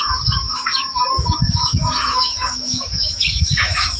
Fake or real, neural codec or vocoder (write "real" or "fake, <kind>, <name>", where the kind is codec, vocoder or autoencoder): fake, autoencoder, DAC-VAE